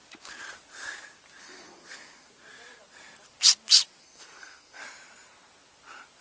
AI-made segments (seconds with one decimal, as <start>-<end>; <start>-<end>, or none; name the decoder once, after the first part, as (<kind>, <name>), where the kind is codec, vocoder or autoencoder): 1.4-2.3 (codec, SNAC); 4.0-4.8